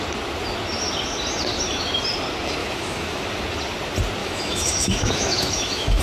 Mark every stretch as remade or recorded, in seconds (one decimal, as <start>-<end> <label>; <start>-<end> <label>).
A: 0.0-2.6 recorded; 2.6-3.2 remade; 3.2-4.2 recorded; 4.2-6.0 remade